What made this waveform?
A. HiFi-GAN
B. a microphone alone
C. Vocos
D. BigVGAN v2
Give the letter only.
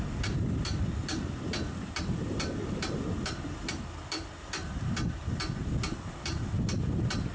B